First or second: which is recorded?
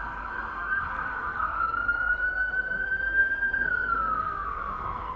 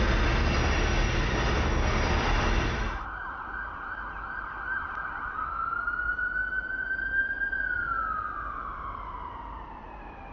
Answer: second